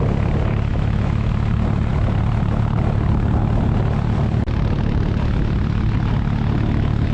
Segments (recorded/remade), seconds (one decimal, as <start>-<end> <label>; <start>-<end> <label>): 0.0-0.7 recorded; 0.7-1.3 remade; 1.3-7.1 recorded